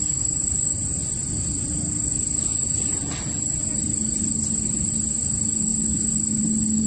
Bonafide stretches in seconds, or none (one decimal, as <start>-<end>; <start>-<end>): 0.0-6.9